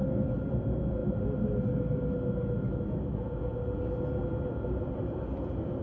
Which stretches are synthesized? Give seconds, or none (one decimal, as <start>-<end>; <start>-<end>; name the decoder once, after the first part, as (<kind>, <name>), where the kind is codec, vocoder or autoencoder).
none